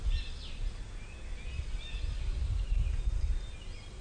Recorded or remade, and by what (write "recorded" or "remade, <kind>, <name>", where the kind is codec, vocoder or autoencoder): recorded